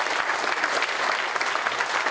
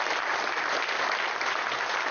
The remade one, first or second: second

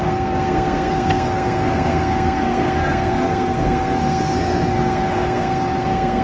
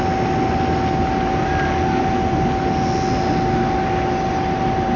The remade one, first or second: first